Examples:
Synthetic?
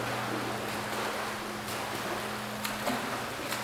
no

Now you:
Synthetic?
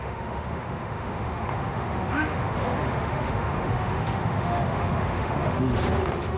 yes